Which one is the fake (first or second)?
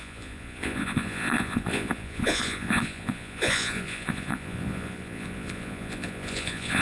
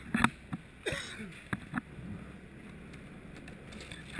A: first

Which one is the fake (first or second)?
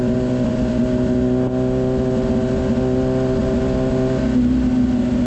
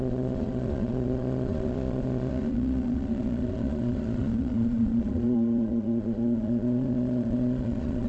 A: second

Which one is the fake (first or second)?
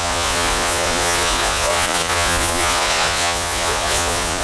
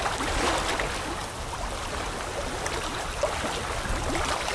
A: first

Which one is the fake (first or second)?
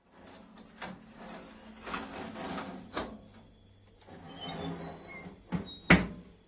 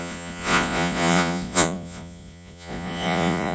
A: second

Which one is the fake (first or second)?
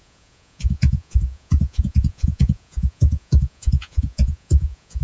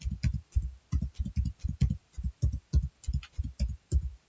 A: first